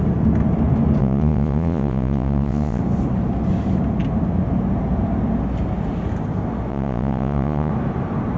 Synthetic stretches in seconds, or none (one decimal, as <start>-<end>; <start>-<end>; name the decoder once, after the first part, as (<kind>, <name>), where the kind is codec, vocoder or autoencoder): 1.0-2.8 (vocoder, Vocos); 6.7-7.7

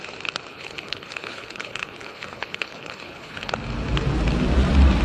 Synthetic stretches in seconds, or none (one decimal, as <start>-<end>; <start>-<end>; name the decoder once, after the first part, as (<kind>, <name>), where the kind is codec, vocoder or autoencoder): 0.5-3.5 (codec, HILCodec)

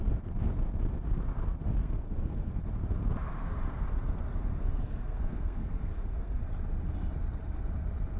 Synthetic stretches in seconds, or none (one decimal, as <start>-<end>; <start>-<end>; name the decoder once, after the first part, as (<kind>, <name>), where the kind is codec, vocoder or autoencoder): 1.8-2.5 (codec, SNAC); 4.5-6.4